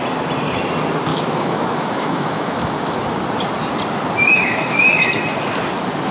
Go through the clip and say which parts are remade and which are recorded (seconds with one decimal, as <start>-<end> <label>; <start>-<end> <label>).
0.0-1.1 recorded; 1.1-3.0 remade; 3.0-4.3 recorded; 4.3-5.1 remade; 5.1-6.1 recorded